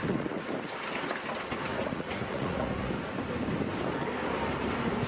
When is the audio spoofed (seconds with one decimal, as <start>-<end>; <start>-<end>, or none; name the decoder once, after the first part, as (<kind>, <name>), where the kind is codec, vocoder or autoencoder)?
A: 0.0-0.5 (vocoder, Vocos); 1.7-2.9